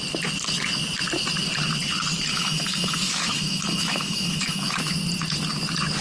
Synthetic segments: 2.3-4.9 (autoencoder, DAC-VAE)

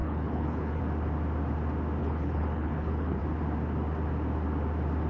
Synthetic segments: 0.0-0.8 (codec, HILCodec); 2.0-3.2

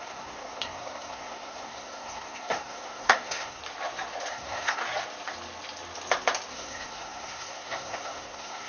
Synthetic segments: 0.0-3.6 (codec, SNAC); 4.3-4.8; 6.5-8.7